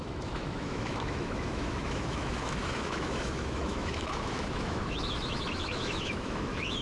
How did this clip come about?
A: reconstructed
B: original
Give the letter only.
A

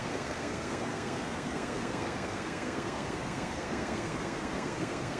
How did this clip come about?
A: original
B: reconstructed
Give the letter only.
B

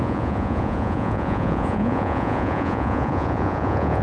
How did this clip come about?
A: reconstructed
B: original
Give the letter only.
A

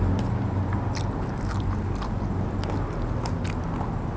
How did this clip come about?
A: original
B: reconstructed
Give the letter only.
A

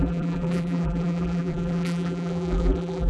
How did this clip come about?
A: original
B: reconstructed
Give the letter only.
B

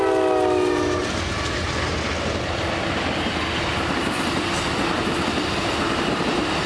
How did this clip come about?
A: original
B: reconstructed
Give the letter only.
A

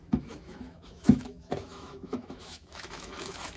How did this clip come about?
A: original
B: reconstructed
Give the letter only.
B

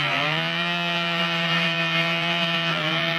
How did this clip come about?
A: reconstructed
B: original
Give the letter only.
A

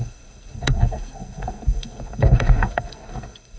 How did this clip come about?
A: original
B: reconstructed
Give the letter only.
B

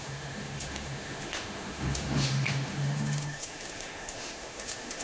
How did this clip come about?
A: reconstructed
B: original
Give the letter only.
A